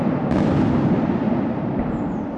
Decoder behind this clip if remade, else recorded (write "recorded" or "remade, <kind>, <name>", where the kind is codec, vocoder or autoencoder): recorded